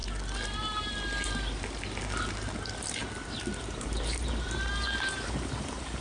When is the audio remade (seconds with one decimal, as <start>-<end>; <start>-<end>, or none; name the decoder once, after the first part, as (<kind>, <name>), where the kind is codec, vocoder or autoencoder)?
3.6-6.0 (vocoder, BigVGAN v2)